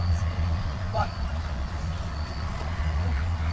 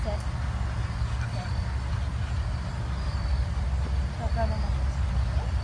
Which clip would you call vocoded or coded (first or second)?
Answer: first